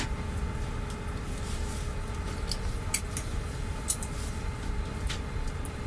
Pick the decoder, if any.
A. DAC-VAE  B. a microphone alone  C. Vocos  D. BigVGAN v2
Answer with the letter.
B